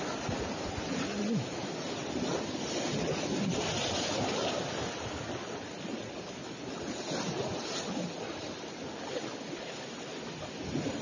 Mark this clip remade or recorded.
recorded